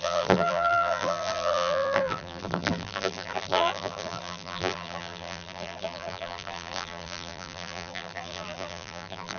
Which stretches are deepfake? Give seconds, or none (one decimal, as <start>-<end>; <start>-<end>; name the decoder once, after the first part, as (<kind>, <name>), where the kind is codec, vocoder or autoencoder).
0.0-9.4 (vocoder, BigVGAN v2)